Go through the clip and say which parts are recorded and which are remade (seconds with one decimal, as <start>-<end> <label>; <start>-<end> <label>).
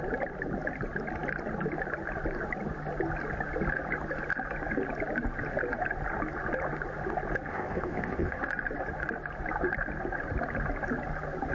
0.0-7.5 recorded; 7.5-8.4 remade; 8.4-11.5 recorded